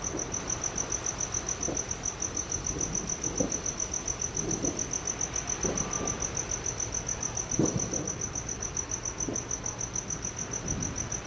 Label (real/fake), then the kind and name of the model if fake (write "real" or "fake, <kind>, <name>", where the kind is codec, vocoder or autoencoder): real